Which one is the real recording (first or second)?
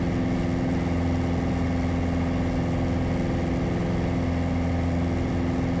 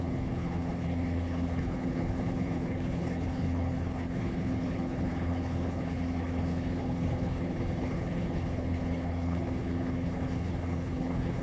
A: first